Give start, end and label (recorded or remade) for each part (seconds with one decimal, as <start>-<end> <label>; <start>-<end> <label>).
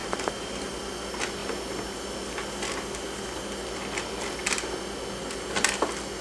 0.0-0.9 remade; 0.9-6.2 recorded